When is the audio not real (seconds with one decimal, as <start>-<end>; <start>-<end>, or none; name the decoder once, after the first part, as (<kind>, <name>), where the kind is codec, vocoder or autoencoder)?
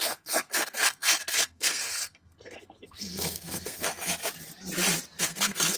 0.0-4.1 (codec, SNAC); 5.2-5.8